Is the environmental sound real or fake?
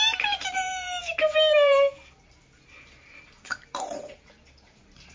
fake